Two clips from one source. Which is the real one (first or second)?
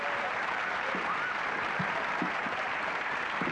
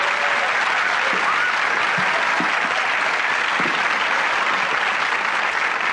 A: second